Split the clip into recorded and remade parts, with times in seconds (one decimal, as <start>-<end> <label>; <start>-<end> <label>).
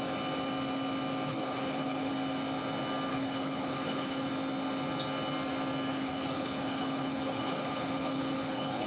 0.0-1.3 recorded; 1.3-2.1 remade; 2.1-3.1 recorded; 3.1-4.3 remade; 4.3-5.9 recorded; 5.9-8.9 remade